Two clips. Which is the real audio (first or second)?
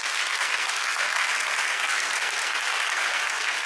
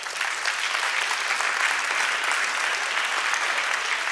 second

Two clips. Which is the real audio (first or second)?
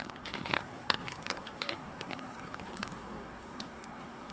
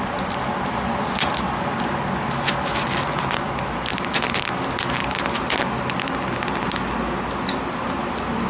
second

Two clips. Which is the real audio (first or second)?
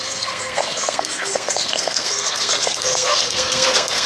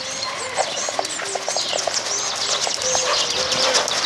second